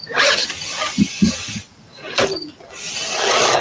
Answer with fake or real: real